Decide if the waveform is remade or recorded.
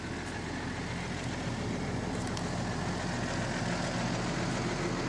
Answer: recorded